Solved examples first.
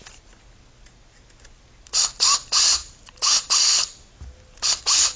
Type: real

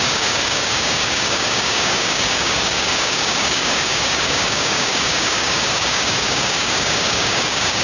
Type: fake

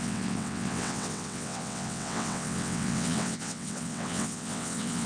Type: fake